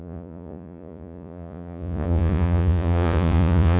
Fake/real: fake